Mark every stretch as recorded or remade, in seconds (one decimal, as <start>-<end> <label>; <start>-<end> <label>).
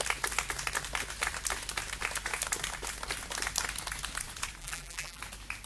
0.0-4.6 recorded; 4.6-5.2 remade; 5.2-5.7 recorded